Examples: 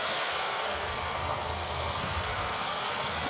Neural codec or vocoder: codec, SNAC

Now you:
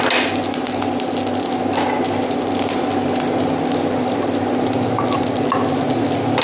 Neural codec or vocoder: none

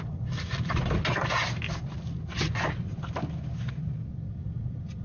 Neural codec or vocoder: none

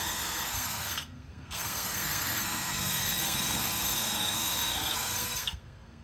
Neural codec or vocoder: codec, SNAC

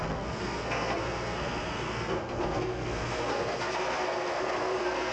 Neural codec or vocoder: codec, SNAC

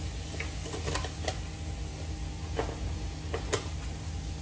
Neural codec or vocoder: none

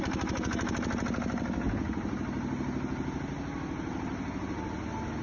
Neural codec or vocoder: none